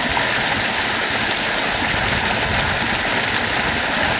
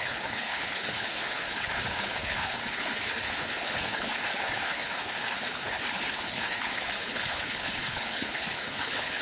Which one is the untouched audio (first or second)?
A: first